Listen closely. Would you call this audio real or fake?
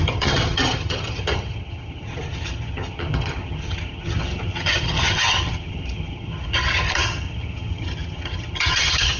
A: fake